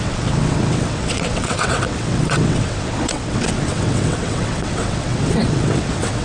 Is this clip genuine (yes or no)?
no